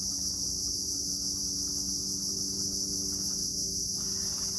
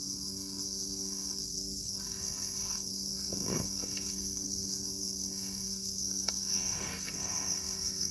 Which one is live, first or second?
first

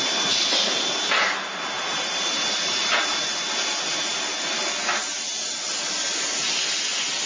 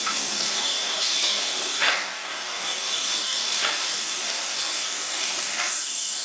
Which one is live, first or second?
first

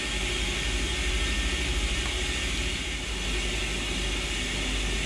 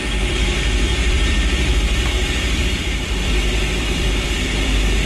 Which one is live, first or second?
first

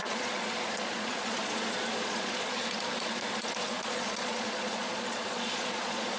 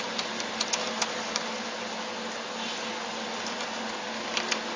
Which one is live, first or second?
second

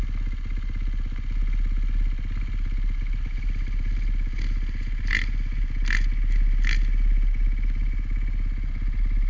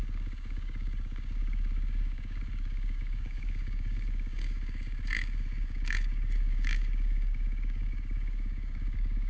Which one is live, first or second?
first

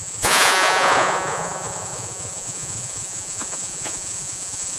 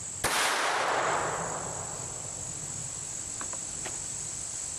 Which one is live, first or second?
second